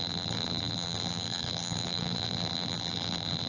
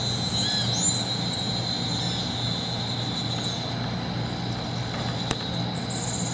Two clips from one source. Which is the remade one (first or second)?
first